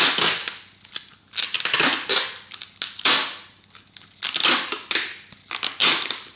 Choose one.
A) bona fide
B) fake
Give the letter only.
A